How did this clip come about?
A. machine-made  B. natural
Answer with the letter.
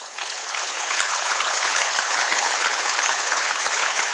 A